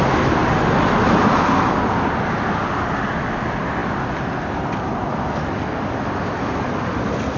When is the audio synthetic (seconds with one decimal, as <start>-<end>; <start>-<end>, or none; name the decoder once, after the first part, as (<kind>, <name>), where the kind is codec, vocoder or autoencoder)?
none